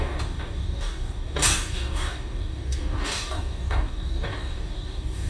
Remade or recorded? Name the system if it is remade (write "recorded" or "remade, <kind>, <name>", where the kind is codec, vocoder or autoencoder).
remade, codec, DAC